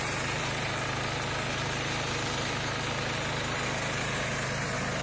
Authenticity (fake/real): real